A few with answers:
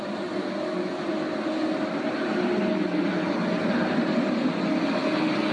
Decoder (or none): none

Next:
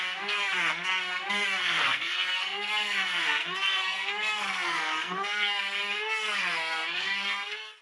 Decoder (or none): codec, SNAC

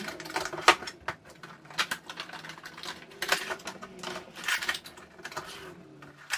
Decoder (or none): none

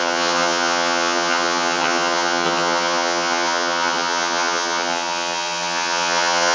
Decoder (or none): vocoder, HiFi-GAN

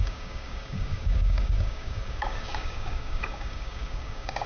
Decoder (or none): codec, DAC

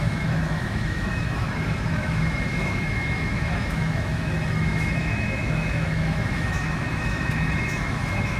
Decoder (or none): autoencoder, DAC-VAE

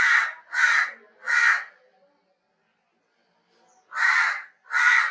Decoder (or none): none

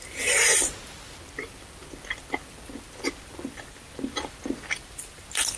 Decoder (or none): vocoder, BigVGAN v2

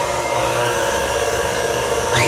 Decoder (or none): codec, DAC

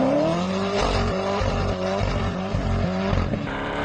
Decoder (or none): vocoder, BigVGAN v2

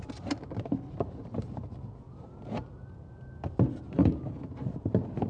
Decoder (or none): none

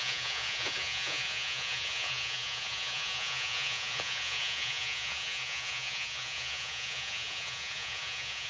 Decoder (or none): vocoder, Vocos